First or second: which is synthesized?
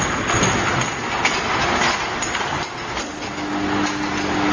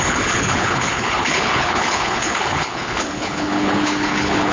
second